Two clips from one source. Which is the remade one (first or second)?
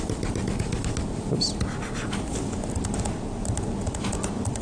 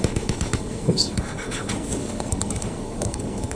second